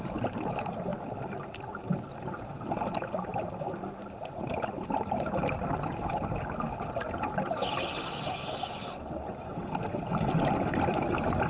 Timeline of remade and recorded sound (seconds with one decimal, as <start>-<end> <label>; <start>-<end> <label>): 0.0-11.5 recorded